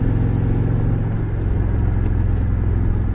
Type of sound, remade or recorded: recorded